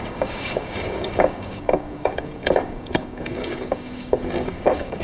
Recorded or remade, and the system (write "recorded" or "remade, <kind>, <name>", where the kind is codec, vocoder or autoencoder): remade, codec, DAC